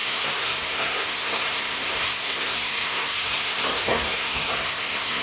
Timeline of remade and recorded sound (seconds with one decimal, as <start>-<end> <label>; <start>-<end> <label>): 0.0-5.2 remade